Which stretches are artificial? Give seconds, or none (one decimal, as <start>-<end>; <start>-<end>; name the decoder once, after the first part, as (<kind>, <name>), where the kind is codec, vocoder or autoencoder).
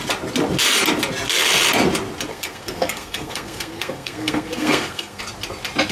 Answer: 2.3-5.2 (codec, SNAC)